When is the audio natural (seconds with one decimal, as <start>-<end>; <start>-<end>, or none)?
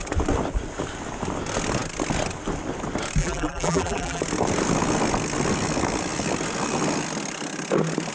0.0-3.2; 4.2-8.1